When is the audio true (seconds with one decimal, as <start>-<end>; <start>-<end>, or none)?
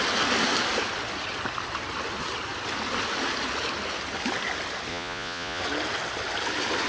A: 0.0-4.9; 5.6-6.9